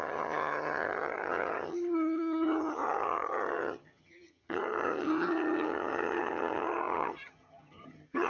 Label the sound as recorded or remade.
remade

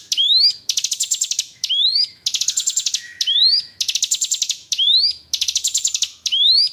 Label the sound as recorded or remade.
remade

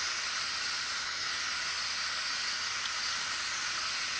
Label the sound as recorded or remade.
recorded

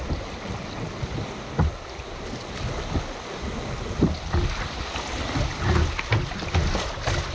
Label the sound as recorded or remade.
recorded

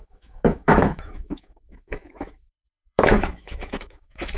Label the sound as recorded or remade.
remade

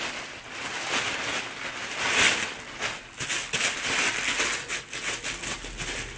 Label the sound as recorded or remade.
recorded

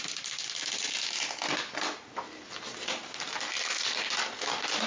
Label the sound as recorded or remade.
recorded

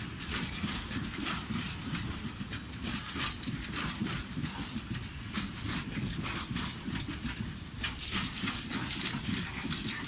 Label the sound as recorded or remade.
remade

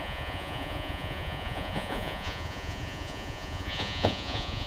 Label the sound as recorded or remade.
remade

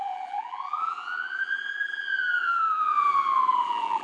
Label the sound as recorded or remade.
remade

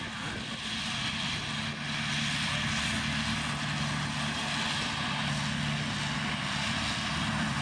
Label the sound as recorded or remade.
recorded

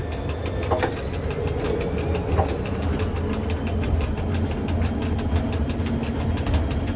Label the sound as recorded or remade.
recorded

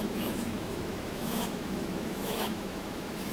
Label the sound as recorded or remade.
remade